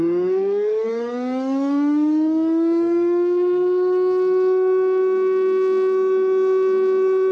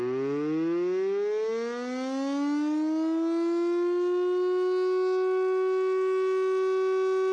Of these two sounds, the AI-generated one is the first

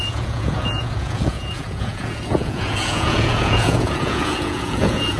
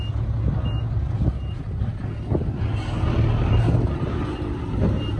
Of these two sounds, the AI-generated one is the first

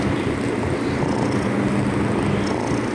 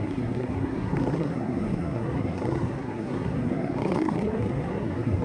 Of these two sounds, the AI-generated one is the second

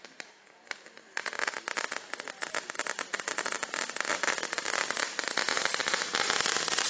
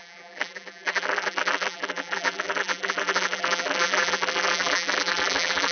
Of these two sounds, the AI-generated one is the second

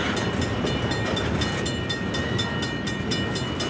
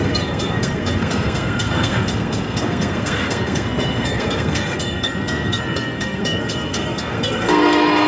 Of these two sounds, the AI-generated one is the second